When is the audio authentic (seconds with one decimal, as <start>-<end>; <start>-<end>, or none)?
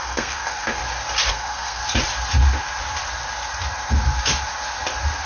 0.8-1.3; 1.8-5.3